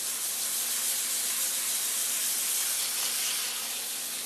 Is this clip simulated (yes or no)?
no